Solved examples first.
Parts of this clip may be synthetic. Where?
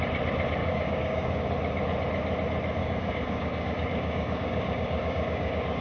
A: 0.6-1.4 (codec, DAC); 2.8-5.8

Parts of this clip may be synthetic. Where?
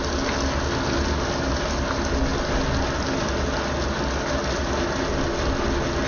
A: none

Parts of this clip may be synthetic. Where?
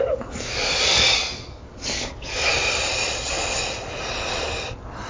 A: 0.0-2.5 (codec, DAC)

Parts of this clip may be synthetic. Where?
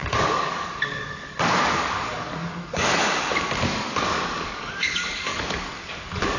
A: 0.0-3.0 (codec, DAC); 3.6-6.4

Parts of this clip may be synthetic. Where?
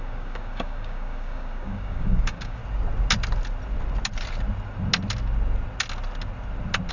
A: 0.0-2.6 (codec, DAC)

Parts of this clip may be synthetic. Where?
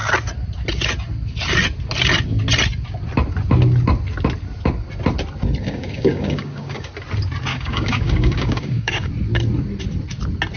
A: 5.6-6.9 (codec, DAC); 7.5-9.1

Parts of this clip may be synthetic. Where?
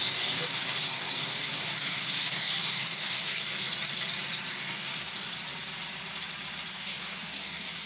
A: 0.0-3.7 (codec, DAC); 4.5-5.3; 6.7-7.9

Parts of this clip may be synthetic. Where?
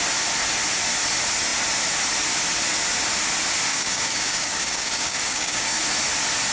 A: 3.7-5.8 (codec, DAC)